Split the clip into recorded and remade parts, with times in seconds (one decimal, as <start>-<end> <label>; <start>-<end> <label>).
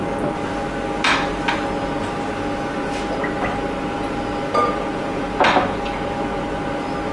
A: 0.0-4.6 recorded; 4.6-5.3 remade; 5.3-7.1 recorded